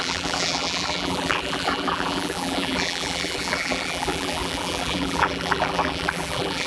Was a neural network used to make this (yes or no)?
yes